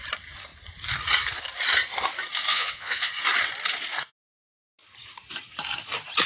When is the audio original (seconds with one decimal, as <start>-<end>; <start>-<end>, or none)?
0.0-2.5; 3.1-6.3